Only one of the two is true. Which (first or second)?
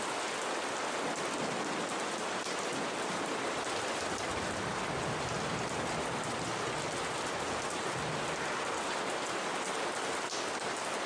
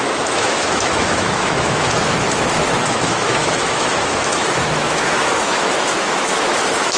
first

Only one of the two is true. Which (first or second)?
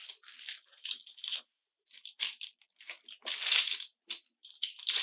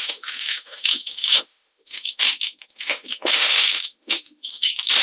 first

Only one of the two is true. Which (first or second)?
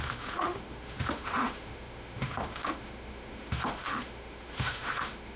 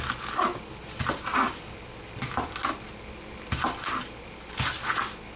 second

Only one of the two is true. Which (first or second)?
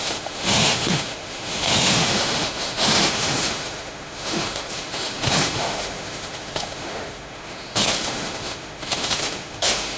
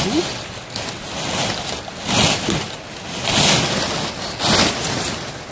second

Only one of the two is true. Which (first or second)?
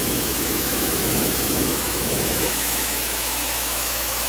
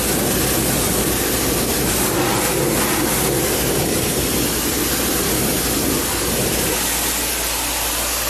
second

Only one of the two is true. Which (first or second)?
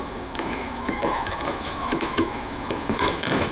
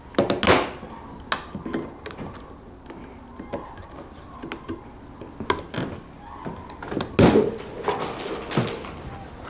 second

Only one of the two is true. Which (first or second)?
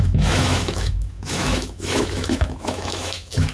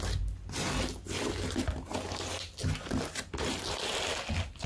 second